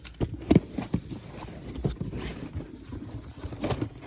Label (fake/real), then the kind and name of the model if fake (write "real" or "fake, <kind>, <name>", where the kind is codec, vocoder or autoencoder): real